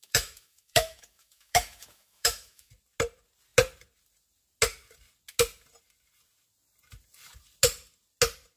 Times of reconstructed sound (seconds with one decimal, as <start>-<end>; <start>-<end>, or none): 0.0-2.7